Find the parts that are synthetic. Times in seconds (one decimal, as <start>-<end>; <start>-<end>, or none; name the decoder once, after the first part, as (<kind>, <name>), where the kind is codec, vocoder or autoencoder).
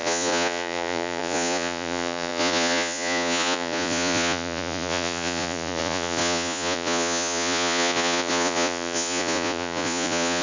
0.0-10.4 (vocoder, Vocos)